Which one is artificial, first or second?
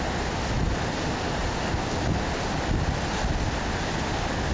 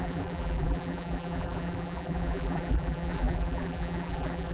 second